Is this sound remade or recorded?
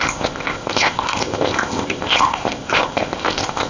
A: remade